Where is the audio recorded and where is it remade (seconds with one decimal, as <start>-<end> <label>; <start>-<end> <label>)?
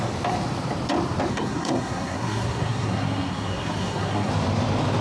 0.0-1.3 recorded; 1.3-4.3 remade; 4.3-5.0 recorded